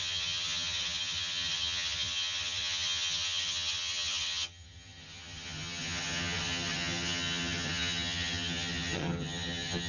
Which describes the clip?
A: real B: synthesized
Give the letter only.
B